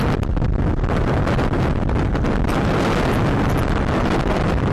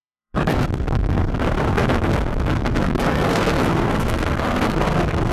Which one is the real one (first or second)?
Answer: first